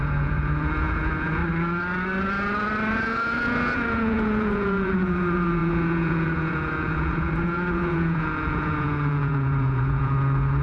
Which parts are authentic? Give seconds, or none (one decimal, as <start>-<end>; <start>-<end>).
1.4-2.9